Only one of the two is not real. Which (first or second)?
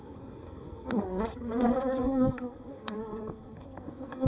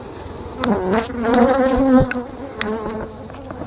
first